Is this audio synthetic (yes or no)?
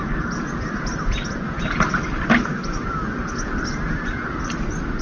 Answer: no